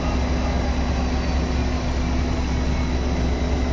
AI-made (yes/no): no